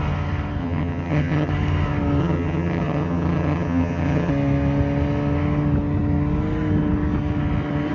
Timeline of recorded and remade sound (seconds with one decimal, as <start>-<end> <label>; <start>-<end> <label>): 0.0-0.6 recorded; 0.6-1.5 remade; 1.5-2.2 recorded; 2.2-4.3 remade; 4.3-7.9 recorded